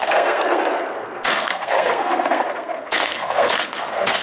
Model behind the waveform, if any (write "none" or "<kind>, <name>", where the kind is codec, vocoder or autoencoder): codec, SNAC